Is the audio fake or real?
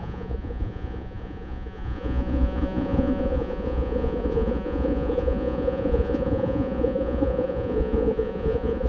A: fake